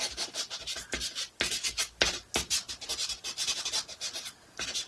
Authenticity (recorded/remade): remade